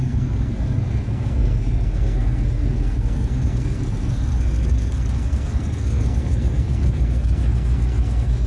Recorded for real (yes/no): no